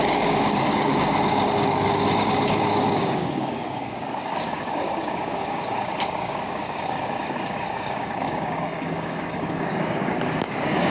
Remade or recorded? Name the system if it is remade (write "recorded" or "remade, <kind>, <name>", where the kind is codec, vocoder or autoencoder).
remade, codec, DAC